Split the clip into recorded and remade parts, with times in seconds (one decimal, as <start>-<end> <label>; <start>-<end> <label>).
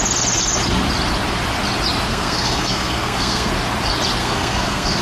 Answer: 0.0-2.1 recorded; 2.1-3.5 remade; 3.5-4.2 recorded; 4.2-5.0 remade